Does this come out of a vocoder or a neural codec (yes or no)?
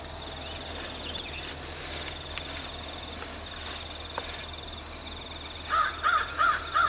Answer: no